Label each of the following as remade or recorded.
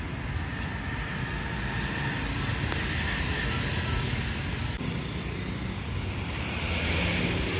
recorded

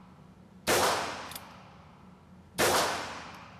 recorded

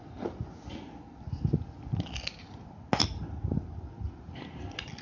recorded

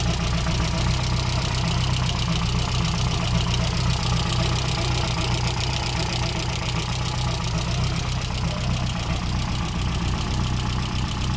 recorded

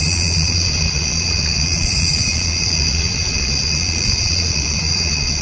remade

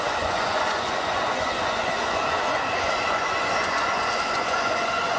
remade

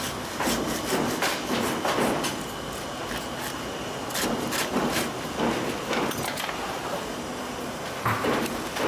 recorded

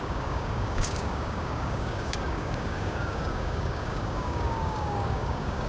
remade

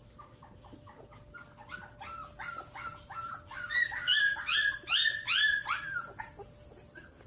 recorded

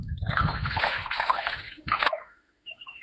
remade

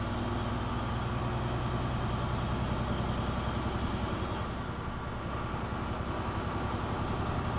recorded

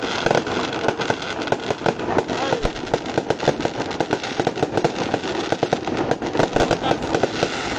recorded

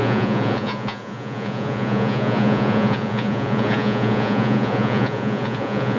remade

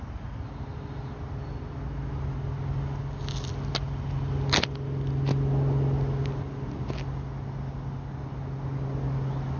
recorded